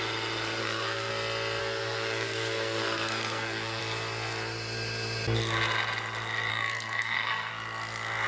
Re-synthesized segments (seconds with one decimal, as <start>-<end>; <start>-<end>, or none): 0.6-1.1; 1.6-3.8; 6.5-7.5

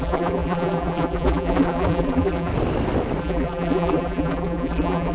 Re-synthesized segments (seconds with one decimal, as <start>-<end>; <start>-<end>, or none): 0.0-2.5; 3.2-5.1